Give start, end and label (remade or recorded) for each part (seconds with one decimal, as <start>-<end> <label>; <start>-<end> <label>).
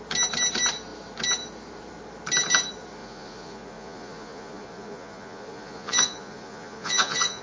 0.0-3.0 recorded; 3.0-7.4 remade